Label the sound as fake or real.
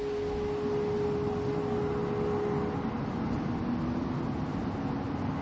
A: real